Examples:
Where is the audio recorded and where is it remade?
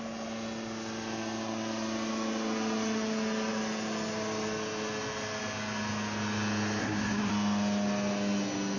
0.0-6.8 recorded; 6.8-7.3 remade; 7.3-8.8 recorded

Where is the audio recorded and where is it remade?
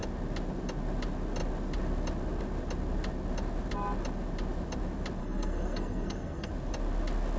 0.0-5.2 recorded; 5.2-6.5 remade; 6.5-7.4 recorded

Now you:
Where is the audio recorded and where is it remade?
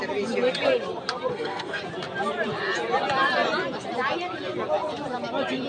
0.0-1.3 recorded; 1.3-1.8 remade; 1.8-5.7 recorded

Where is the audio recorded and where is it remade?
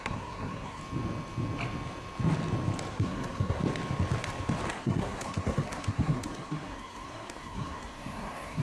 0.0-0.8 remade; 0.8-2.9 recorded; 2.9-3.6 remade; 3.6-4.7 recorded; 4.7-8.6 remade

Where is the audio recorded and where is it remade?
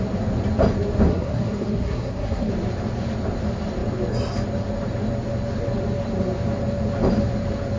0.0-1.1 recorded; 1.1-2.5 remade; 2.5-7.8 recorded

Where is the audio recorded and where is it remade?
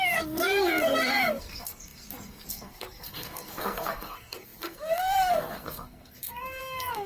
0.0-7.1 remade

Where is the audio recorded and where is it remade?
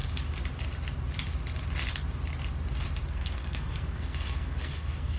0.0-3.1 recorded; 3.1-5.2 remade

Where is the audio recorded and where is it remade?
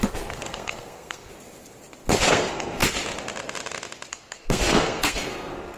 0.0-1.3 remade; 1.3-2.3 recorded; 2.3-2.8 remade; 2.8-4.1 recorded; 4.1-5.8 remade